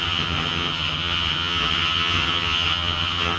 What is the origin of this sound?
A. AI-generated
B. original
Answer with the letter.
A